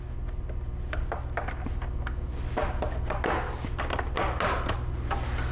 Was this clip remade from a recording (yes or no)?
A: no